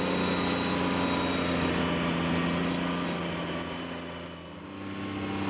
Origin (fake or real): real